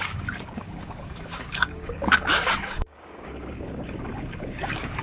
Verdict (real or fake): fake